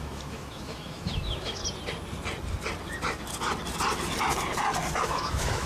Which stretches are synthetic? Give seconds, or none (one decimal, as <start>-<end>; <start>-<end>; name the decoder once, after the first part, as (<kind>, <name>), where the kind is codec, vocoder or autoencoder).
0.0-1.6 (autoencoder, DAC-VAE); 5.0-5.7